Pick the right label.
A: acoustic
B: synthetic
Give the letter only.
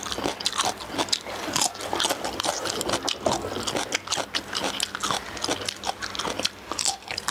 A